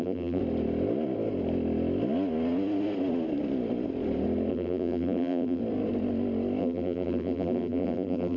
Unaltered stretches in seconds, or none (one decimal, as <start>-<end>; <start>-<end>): 0.4-4.5; 5.6-6.6